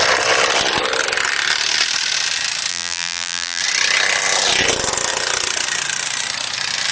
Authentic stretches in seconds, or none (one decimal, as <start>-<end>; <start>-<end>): 0.0-2.7; 3.6-6.9